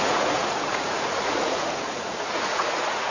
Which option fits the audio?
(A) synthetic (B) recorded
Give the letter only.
A